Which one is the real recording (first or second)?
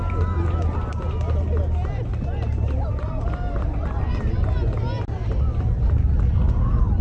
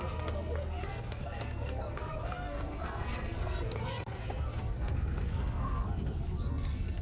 first